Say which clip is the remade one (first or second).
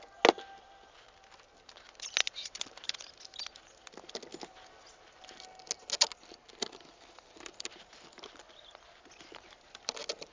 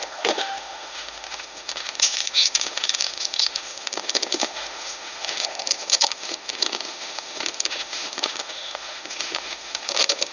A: second